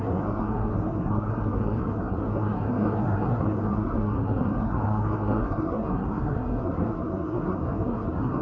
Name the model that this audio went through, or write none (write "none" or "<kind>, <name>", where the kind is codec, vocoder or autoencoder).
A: codec, SNAC